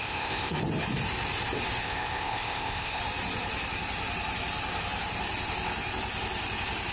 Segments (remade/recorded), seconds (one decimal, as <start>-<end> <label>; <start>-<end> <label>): 0.0-0.6 remade; 0.6-1.8 recorded; 1.8-3.0 remade; 3.0-6.9 recorded